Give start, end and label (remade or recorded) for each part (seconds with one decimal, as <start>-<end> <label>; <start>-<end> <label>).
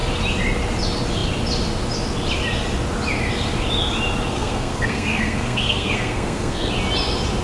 0.0-4.3 recorded; 4.3-6.7 remade; 6.7-7.4 recorded